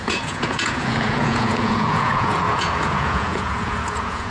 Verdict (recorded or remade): remade